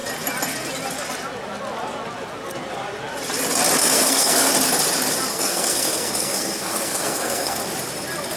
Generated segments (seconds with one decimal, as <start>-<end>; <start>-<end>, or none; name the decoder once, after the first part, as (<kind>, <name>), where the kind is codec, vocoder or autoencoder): 3.8-4.5 (codec, SNAC); 5.3-7.6